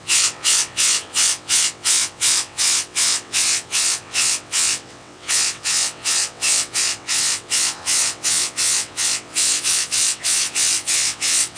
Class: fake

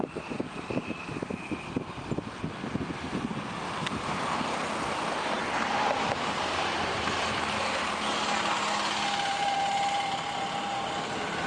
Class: real